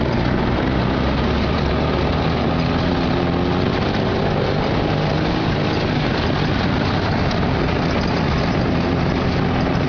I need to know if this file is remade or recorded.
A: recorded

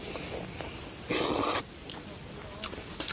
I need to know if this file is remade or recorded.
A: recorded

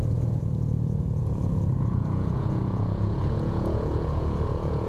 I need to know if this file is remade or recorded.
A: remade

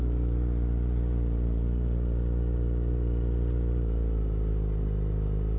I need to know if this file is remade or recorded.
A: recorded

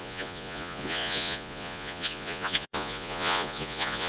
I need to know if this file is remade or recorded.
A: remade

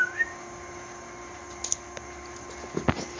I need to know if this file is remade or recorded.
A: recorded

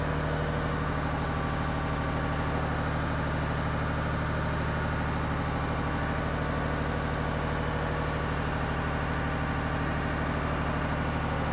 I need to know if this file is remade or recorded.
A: recorded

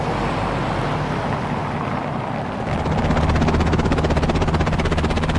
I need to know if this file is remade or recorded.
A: recorded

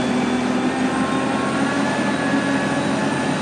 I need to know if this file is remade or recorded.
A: recorded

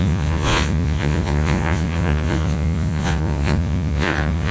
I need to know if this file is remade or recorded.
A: remade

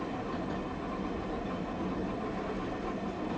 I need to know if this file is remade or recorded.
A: recorded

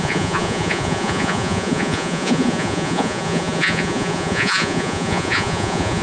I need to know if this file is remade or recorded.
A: remade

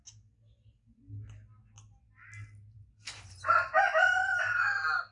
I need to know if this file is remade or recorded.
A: recorded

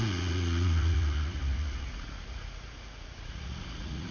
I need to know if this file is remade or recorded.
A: remade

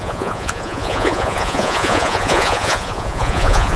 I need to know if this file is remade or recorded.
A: remade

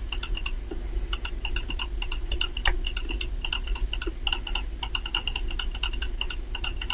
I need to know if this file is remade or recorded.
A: recorded